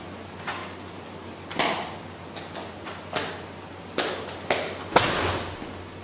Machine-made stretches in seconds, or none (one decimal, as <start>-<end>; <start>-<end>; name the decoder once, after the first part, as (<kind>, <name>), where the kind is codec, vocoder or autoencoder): none